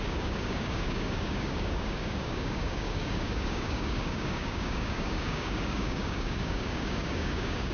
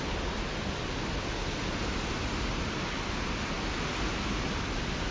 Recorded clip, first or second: second